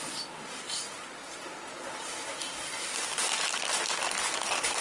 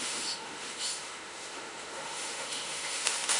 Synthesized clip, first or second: second